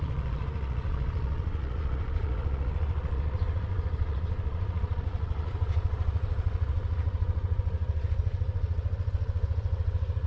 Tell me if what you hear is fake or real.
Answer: fake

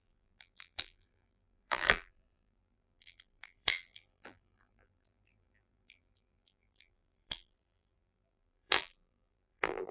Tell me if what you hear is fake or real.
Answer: fake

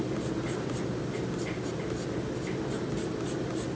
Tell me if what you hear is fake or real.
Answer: real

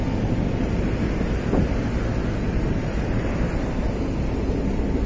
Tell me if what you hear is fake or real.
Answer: real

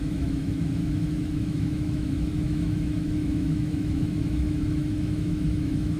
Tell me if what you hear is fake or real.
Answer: fake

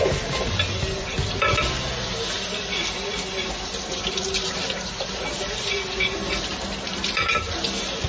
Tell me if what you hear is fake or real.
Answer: real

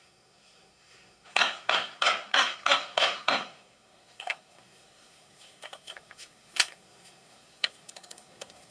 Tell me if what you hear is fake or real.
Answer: fake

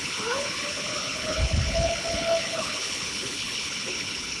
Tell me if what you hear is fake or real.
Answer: fake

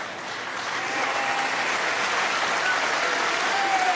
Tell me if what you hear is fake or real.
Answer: real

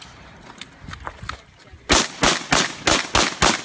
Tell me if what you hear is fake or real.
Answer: real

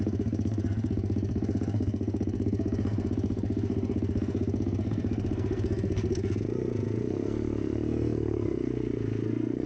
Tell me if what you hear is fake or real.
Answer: fake